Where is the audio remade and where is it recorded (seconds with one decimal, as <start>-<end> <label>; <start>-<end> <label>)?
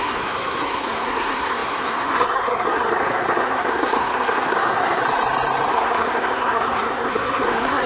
0.0-5.0 remade; 5.0-5.7 recorded; 5.7-7.9 remade